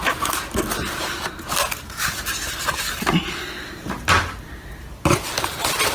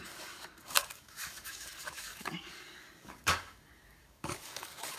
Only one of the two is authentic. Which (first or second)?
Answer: first